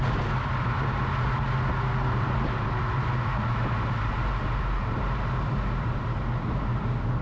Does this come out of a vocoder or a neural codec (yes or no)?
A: no